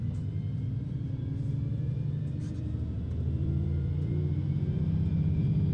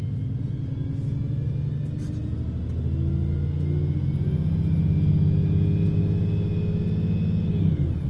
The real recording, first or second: second